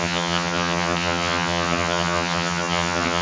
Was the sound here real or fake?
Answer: fake